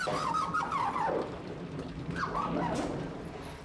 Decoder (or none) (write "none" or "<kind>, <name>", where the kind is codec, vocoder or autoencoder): none